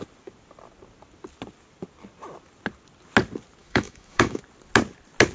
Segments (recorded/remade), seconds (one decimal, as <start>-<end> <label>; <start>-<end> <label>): 0.0-3.6 recorded; 3.6-4.4 remade; 4.4-5.3 recorded